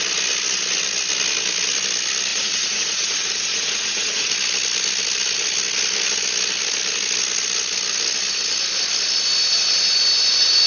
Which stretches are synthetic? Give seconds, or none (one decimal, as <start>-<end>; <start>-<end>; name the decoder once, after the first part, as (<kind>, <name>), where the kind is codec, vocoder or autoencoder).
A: 2.3-4.3 (vocoder, Vocos)